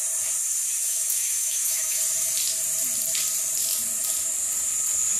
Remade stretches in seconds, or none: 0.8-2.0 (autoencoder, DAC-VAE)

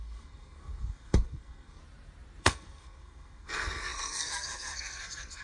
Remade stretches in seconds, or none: 0.0-1.8 (codec, SNAC); 2.4-5.4

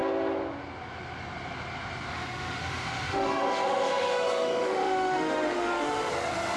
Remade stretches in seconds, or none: 2.1-6.1 (autoencoder, DAC-VAE)

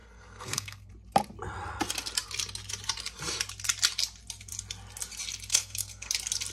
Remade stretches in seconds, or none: 0.0-0.9 (codec, SNAC); 5.5-6.1

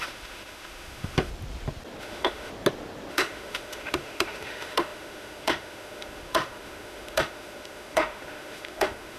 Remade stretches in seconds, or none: 0.0-1.3 (autoencoder, DAC-VAE); 2.0-2.5; 3.1-9.2

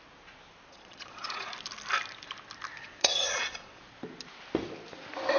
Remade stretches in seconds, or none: 0.7-1.5 (vocoder, Vocos); 2.8-3.8

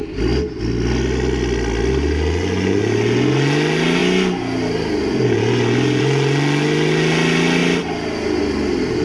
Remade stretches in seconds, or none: none